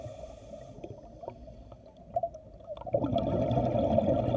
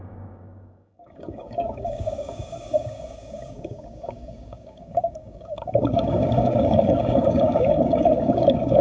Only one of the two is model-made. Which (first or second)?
second